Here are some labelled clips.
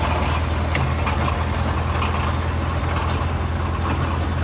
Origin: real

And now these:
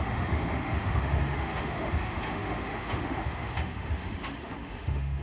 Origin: fake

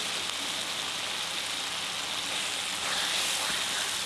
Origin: real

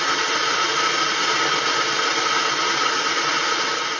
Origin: real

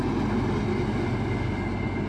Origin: real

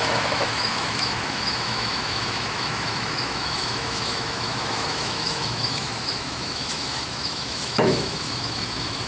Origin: fake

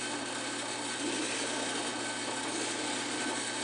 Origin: real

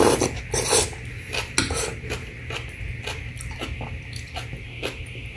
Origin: real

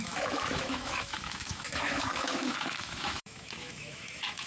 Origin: fake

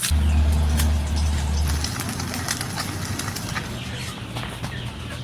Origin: real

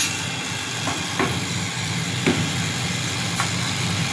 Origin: real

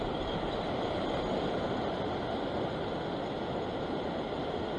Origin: real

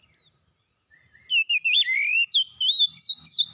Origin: real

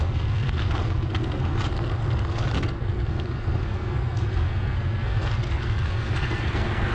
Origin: fake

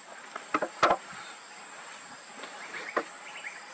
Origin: real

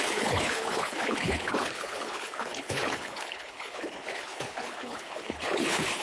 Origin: fake